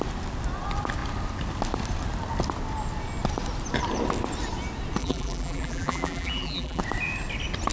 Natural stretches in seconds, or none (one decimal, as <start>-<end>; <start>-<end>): 0.0-5.0; 6.8-7.7